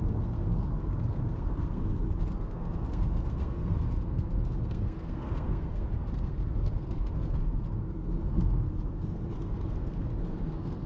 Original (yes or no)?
no